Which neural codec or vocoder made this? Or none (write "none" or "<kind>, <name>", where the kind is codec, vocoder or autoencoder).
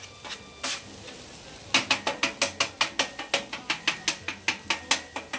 none